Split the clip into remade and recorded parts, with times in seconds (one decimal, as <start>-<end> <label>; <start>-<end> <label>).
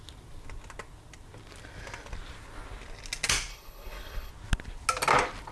0.0-3.5 recorded; 3.5-4.3 remade; 4.3-5.5 recorded